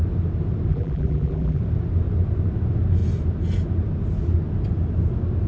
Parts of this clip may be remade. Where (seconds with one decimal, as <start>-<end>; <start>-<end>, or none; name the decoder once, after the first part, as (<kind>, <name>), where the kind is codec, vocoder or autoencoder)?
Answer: 0.7-1.6 (vocoder, BigVGAN v2)